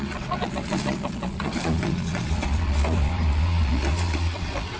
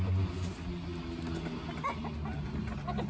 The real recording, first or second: second